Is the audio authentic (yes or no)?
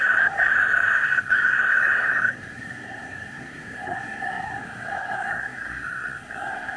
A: no